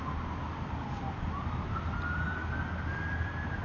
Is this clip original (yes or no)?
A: yes